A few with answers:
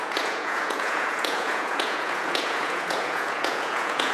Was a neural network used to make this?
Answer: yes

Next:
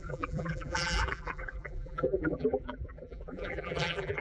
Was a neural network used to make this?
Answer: yes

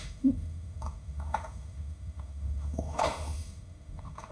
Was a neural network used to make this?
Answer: yes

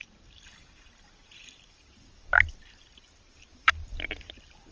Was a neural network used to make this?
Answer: yes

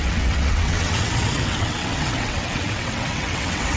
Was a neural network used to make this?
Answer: yes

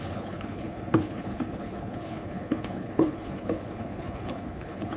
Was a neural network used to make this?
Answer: yes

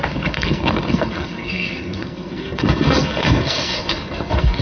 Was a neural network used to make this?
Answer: yes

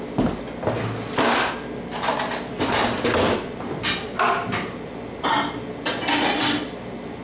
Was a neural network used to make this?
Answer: no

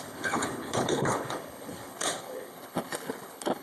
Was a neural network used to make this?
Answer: yes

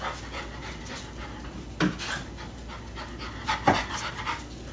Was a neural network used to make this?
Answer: no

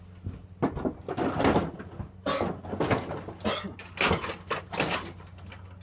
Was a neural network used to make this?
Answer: no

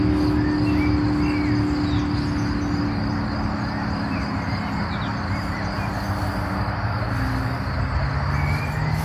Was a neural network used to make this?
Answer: no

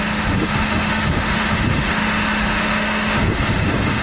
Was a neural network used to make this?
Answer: yes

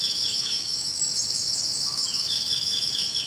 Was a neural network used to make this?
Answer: yes